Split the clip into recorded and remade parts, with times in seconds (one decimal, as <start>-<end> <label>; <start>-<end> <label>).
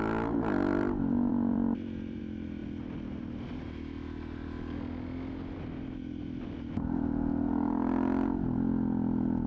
0.0-1.3 recorded; 1.3-2.2 remade; 2.2-9.5 recorded